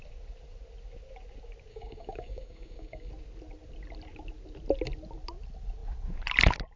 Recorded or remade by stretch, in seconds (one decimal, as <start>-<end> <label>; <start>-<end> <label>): 0.0-1.7 recorded; 1.7-3.1 remade; 3.1-6.8 recorded